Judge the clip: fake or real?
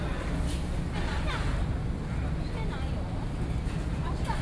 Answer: real